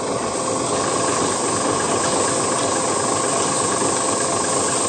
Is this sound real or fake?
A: real